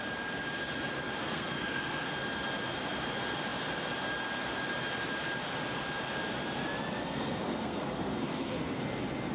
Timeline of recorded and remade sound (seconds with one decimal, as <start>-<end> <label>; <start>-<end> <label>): 0.0-1.2 recorded; 1.2-2.1 remade; 2.1-7.0 recorded; 7.0-8.8 remade; 8.8-9.3 recorded